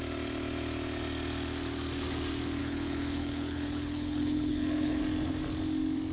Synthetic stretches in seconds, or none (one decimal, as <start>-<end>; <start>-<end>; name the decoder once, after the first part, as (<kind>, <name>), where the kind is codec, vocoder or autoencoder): 2.6-5.0 (codec, HILCodec)